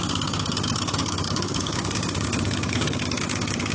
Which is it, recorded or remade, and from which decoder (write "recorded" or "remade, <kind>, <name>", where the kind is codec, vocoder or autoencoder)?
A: remade, codec, DAC